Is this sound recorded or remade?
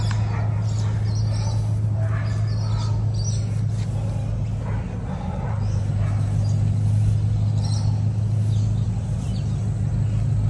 recorded